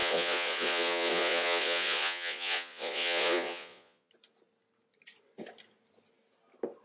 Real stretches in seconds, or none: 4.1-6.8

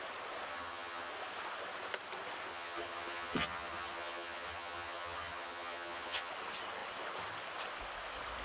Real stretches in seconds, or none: 0.0-0.5; 1.1-2.5; 6.3-8.4

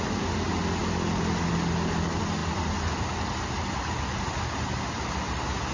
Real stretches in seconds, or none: 0.0-5.7

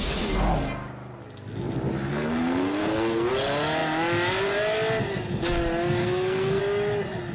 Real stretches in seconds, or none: 0.0-2.1; 3.3-6.0; 6.6-7.3

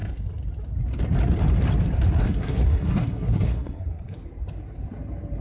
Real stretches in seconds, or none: 0.0-2.2; 4.1-5.4

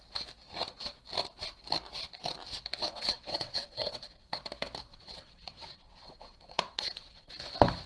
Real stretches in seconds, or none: 0.0-2.8; 4.4-4.9; 7.3-7.9